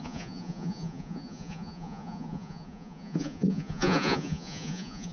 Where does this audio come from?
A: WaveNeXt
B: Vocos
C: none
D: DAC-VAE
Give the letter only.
B